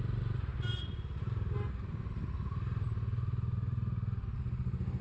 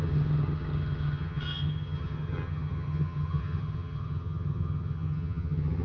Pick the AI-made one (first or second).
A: second